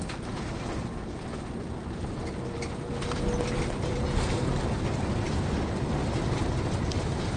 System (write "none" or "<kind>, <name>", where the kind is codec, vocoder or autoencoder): none